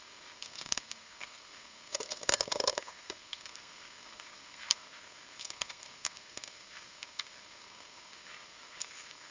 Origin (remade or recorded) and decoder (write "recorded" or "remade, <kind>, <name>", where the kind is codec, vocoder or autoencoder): remade, codec, SNAC